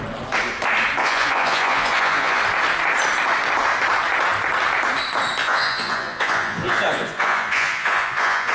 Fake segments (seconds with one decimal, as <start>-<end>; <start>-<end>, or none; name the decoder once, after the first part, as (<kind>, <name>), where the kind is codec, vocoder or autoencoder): 1.0-2.4 (vocoder, Vocos); 5.4-8.5